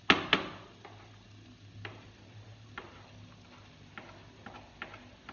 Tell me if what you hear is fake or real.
real